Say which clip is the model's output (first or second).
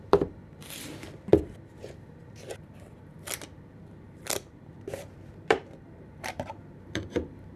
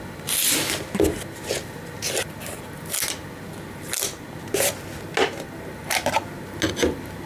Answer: first